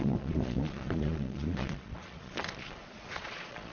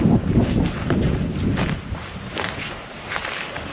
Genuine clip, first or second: second